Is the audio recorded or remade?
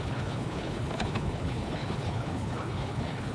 remade